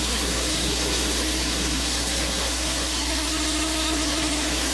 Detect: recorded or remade remade